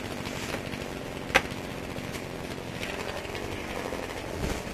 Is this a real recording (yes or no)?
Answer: yes